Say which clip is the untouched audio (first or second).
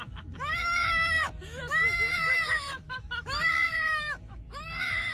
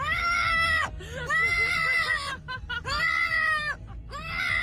second